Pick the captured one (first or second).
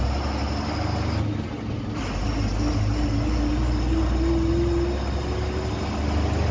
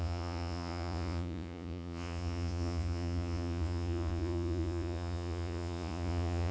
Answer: first